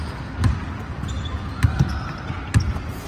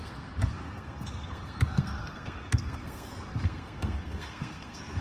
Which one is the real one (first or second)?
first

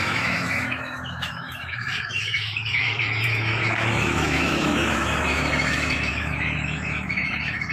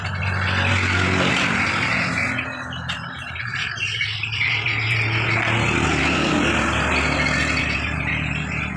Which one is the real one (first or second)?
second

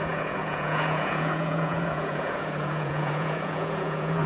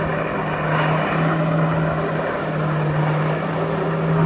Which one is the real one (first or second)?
second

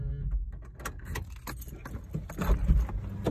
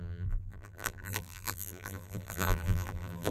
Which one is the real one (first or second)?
first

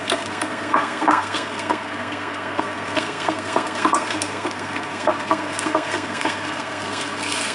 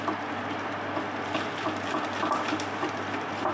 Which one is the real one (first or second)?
second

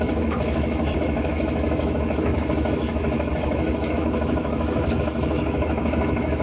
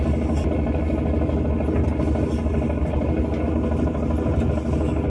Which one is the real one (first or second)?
second